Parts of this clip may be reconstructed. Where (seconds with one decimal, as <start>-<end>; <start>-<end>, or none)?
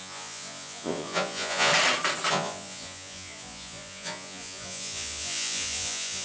0.0-1.7; 2.3-6.2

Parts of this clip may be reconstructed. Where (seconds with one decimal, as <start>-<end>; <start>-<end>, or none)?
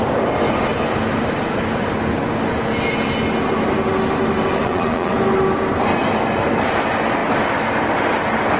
4.6-5.1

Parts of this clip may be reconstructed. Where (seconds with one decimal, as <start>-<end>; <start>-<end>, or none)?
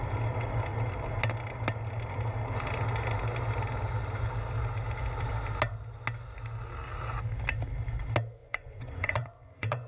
8.4-9.9